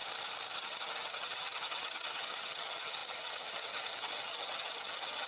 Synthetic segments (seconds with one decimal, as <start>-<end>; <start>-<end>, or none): 0.5-5.3